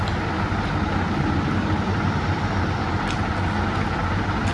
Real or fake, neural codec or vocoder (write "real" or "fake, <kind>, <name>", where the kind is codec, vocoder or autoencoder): real